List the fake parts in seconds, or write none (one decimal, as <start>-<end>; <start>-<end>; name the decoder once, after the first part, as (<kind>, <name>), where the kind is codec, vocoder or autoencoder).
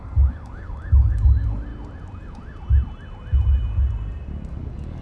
0.0-1.7 (codec, DAC); 4.5-5.0